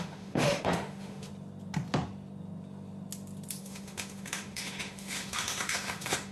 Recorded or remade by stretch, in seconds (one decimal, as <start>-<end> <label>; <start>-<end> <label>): 0.0-1.3 remade; 1.3-3.6 recorded; 3.6-6.3 remade